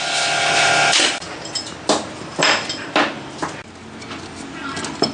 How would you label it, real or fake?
real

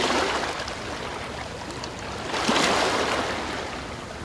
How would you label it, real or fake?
real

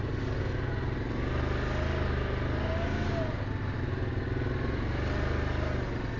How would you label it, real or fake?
real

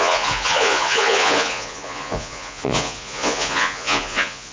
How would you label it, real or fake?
fake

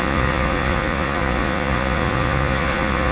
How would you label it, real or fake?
fake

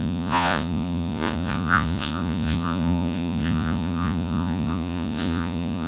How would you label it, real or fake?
fake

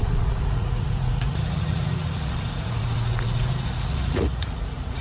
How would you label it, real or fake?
fake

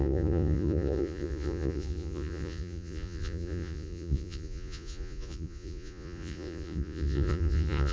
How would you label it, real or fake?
fake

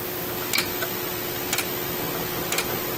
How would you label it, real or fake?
real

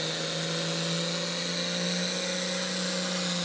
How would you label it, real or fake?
real